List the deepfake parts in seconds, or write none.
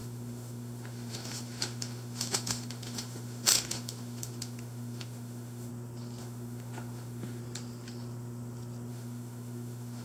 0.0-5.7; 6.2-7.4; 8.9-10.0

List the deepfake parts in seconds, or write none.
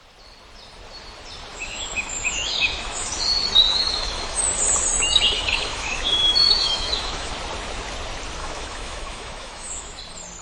1.5-3.1; 3.7-4.4; 4.9-7.3; 8.4-10.0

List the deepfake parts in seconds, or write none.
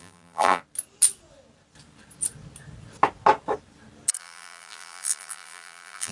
0.0-0.6; 4.2-6.1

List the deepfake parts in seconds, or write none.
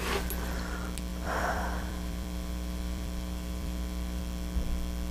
1.1-4.2